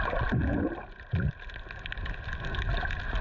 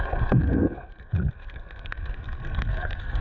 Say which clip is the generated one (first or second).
second